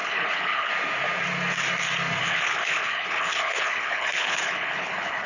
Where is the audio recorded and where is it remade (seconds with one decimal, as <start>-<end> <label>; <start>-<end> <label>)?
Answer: 0.0-0.7 remade; 0.7-2.2 recorded; 2.2-5.3 remade